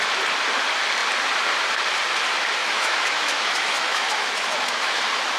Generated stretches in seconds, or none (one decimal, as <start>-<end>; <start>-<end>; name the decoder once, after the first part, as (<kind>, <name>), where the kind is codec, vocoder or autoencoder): 2.6-5.0 (autoencoder, DAC-VAE)